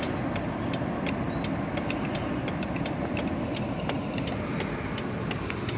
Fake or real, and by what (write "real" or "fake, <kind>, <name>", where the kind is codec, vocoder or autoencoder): real